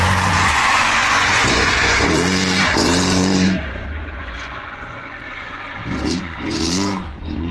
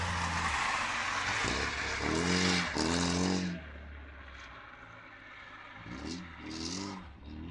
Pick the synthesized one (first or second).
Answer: first